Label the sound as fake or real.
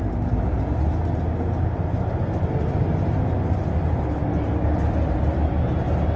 real